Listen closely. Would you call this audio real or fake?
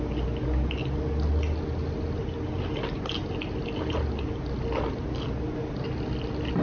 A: real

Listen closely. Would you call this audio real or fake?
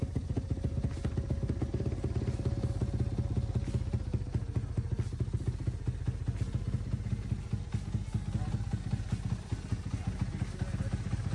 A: real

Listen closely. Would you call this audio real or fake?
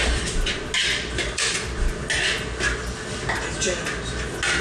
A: real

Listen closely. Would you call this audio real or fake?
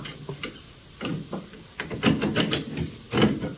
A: real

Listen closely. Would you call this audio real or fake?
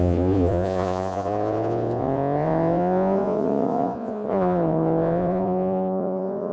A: fake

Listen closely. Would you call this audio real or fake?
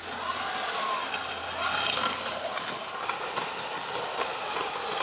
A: real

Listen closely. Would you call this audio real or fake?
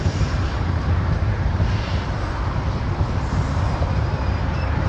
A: fake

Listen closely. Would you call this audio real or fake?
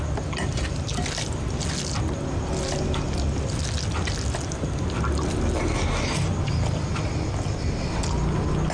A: real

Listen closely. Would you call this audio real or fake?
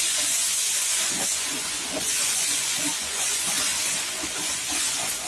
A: fake